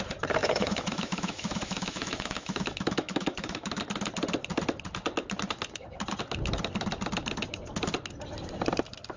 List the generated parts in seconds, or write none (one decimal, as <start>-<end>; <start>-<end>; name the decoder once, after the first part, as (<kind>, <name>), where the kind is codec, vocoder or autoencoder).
0.4-3.8 (autoencoder, DAC-VAE)